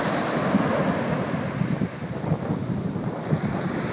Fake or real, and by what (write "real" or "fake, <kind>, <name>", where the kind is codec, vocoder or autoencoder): real